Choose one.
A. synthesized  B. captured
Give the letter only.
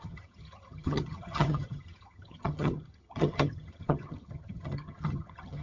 A